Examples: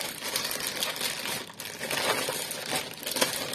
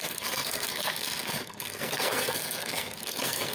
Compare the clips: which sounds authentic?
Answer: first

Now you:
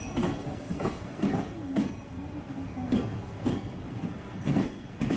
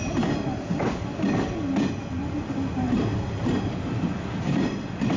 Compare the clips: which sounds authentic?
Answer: second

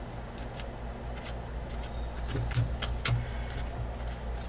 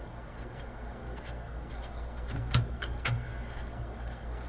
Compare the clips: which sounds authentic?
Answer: first